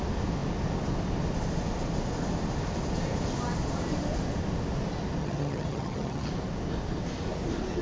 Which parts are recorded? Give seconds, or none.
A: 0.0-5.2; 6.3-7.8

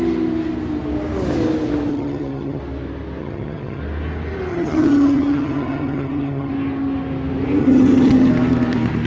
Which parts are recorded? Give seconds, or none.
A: 0.0-1.9; 2.6-3.2; 3.8-4.5; 6.5-7.6; 8.3-9.1